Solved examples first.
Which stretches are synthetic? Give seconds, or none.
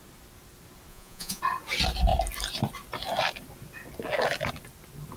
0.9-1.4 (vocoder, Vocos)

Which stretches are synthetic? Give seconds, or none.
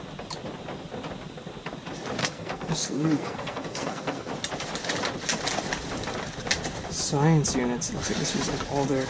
2.2-4.3 (codec, SNAC)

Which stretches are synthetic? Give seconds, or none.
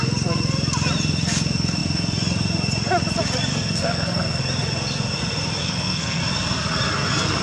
3.5-4.4 (codec, SNAC); 5.6-6.2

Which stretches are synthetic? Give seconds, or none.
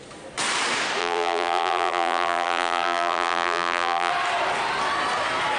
1.0-4.1 (vocoder, BigVGAN v2)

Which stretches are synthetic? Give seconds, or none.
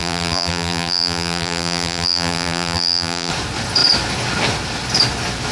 0.0-3.3 (vocoder, BigVGAN v2)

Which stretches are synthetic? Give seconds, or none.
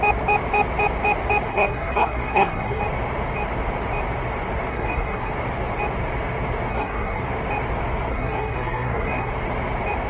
1.5-2.8 (codec, SNAC); 4.7-5.3; 6.7-7.2; 8.1-9.3